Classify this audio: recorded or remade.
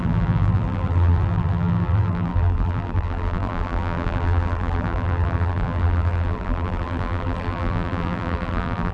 remade